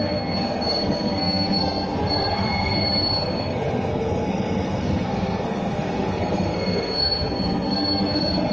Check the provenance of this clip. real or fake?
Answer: fake